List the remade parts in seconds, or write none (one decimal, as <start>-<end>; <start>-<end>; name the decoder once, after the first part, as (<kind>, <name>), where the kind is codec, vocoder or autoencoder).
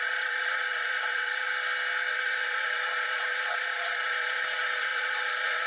0.0-1.5 (vocoder, Vocos); 2.1-5.7